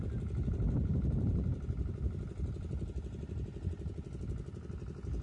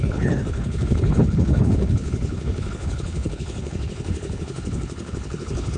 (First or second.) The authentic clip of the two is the first